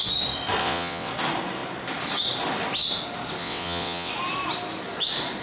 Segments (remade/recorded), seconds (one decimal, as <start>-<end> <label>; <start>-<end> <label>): 0.0-0.6 recorded; 0.6-1.1 remade; 1.1-3.4 recorded; 3.4-4.1 remade; 4.1-5.4 recorded